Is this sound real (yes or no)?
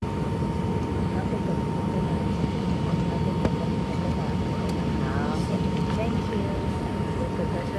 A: yes